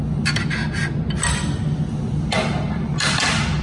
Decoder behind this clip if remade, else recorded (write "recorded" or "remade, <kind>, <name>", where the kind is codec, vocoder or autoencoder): recorded